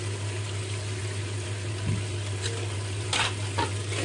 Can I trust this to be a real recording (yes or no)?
yes